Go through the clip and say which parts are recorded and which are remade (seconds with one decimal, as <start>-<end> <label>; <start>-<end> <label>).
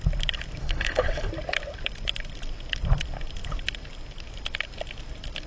0.0-0.6 recorded; 0.6-1.3 remade; 1.3-5.5 recorded